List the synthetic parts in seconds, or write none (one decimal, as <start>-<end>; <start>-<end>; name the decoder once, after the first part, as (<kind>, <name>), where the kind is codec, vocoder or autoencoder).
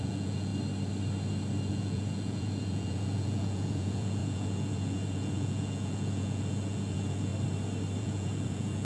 0.0-0.5 (vocoder, Vocos); 1.7-7.3; 8.0-8.8